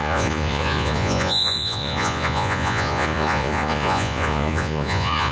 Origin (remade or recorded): remade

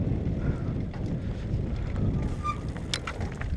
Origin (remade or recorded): recorded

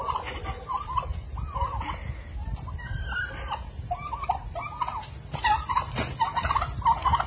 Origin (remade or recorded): recorded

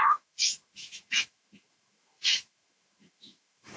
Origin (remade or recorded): remade